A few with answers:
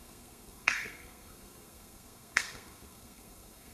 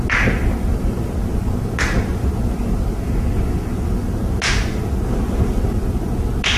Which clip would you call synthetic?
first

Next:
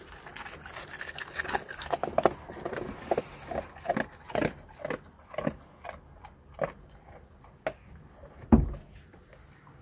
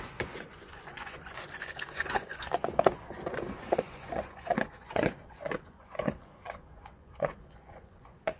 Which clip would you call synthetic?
second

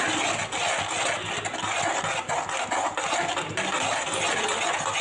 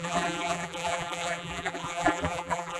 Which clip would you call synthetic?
second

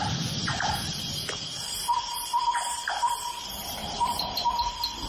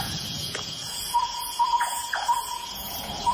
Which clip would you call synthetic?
second